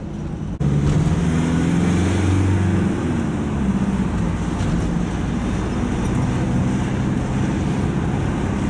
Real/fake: real